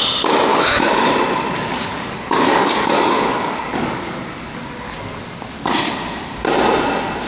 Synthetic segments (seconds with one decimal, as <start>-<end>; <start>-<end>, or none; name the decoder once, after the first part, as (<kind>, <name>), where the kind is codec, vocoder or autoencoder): 0.5-1.0 (codec, DAC); 1.9-4.6